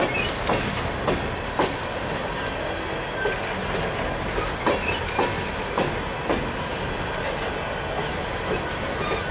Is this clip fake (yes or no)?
no